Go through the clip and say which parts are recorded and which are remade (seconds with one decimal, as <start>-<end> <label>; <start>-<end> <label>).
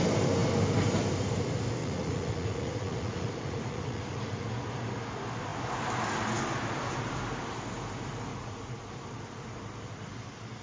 0.0-1.8 recorded; 1.8-4.5 remade; 4.5-8.3 recorded; 8.3-8.9 remade; 8.9-10.6 recorded